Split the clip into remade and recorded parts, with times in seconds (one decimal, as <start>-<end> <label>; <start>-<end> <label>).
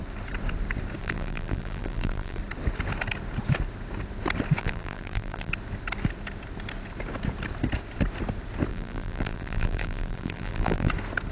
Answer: 0.0-1.0 recorded; 1.0-2.4 remade; 2.4-4.6 recorded; 4.6-5.5 remade; 5.5-8.7 recorded; 8.7-10.9 remade; 10.9-11.3 recorded